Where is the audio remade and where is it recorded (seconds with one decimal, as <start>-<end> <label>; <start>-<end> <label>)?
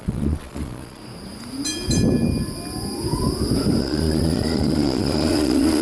0.0-1.0 remade; 1.0-3.8 recorded; 3.8-5.8 remade